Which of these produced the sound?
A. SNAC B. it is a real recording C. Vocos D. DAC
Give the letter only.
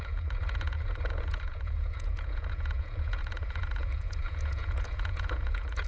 C